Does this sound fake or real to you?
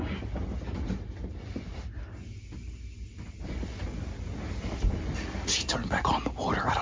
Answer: real